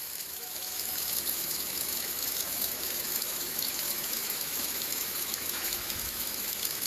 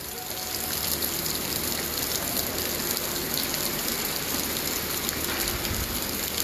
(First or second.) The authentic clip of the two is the second